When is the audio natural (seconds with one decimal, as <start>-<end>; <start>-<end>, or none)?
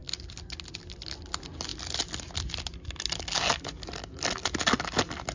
0.0-5.3